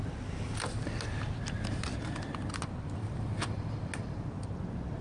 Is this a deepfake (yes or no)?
no